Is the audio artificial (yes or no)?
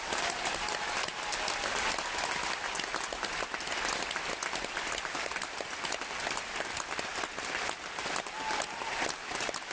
no